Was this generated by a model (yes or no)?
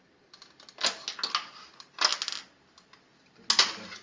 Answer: no